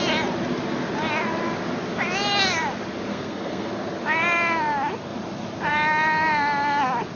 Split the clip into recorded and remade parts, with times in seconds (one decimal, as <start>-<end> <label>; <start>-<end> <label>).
0.0-3.1 recorded; 3.1-3.7 remade; 3.7-7.2 recorded